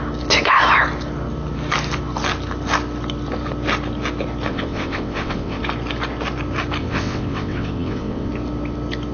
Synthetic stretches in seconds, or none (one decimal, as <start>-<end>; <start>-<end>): 4.5-5.6; 6.8-8.3